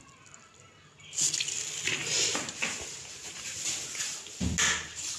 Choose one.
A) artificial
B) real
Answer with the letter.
B